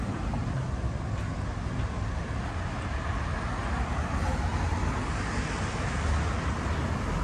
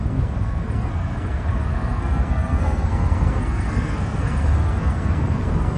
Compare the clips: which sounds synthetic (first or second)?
second